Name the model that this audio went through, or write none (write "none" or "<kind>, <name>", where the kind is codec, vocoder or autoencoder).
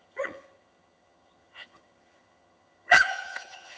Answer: vocoder, HiFi-GAN